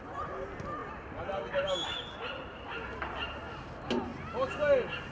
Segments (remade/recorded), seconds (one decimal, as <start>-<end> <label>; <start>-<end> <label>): 0.0-5.1 recorded